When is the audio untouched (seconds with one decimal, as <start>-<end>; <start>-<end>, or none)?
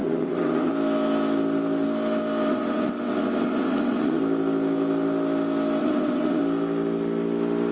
0.7-2.5; 4.2-5.8; 6.4-7.7